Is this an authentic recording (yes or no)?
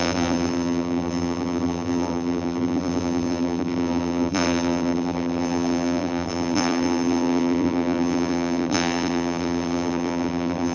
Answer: no